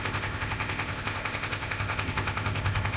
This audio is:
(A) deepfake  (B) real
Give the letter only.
A